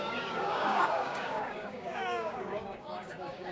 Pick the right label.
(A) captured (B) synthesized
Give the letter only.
B